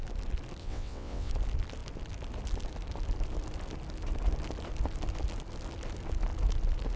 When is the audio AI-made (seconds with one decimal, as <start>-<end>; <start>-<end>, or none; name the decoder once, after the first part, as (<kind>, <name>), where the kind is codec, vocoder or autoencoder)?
0.6-1.3 (vocoder, WaveNeXt)